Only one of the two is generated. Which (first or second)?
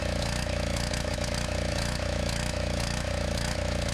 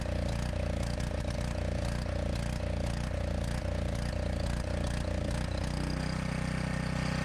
first